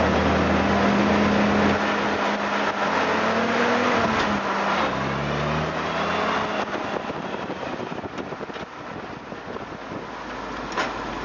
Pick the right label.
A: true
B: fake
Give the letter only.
A